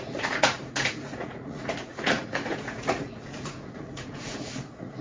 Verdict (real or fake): fake